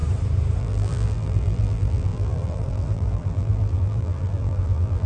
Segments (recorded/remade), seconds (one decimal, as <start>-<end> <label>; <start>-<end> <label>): 0.0-0.6 recorded; 0.6-5.1 remade